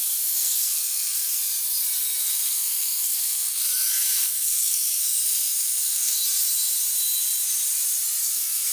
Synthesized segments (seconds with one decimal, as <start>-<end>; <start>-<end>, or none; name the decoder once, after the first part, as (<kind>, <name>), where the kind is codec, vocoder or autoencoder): 0.0-1.4 (codec, SNAC); 2.2-6.2; 8.2-8.7